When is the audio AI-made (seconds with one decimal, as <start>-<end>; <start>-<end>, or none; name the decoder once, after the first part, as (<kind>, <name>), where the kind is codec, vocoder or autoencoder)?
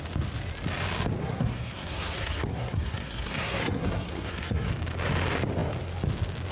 1.2-4.7 (codec, SNAC)